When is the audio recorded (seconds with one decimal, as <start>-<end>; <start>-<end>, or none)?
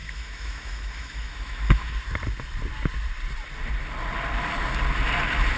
2.0-5.6